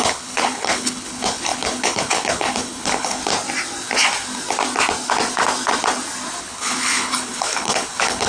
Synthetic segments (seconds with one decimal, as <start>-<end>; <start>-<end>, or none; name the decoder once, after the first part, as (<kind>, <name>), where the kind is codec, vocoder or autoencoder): 0.0-3.2 (codec, HILCodec); 6.4-8.3